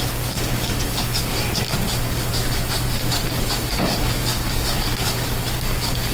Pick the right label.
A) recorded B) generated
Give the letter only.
B